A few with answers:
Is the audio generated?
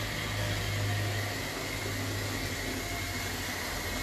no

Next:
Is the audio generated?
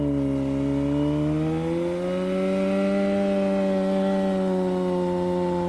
no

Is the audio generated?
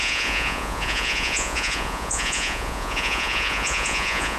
yes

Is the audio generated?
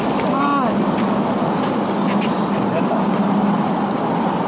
no